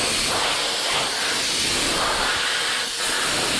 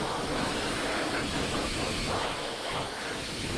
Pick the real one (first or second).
first